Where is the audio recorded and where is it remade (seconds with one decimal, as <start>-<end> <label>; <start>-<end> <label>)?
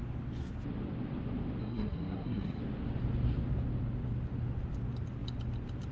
0.0-1.6 recorded; 1.6-2.6 remade; 2.6-5.9 recorded